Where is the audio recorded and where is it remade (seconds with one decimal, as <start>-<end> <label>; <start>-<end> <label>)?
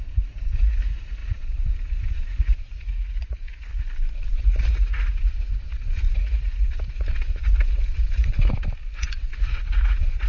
0.0-3.7 remade; 3.7-4.4 recorded; 4.4-8.3 remade; 8.3-9.0 recorded; 9.0-10.3 remade